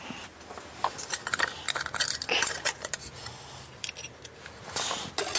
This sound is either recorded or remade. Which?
recorded